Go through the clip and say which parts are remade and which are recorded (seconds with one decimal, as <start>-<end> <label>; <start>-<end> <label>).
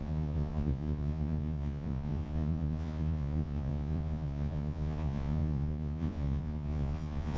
0.0-7.4 remade